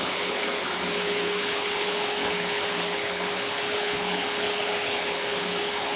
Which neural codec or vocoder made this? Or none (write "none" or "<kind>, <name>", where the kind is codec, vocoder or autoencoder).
codec, HILCodec